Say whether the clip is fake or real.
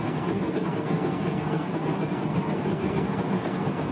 fake